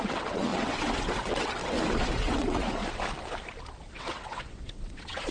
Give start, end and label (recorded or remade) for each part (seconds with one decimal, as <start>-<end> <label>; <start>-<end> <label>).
0.0-1.6 remade; 1.6-2.1 recorded; 2.1-2.8 remade; 2.8-3.9 recorded; 3.9-5.3 remade